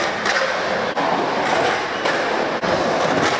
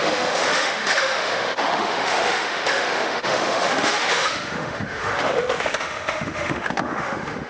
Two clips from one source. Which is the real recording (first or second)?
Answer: first